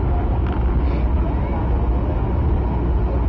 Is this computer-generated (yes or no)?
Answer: no